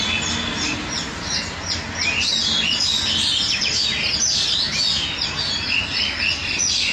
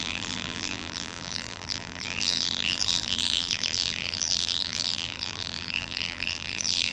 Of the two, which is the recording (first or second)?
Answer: first